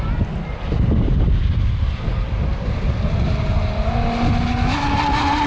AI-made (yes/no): no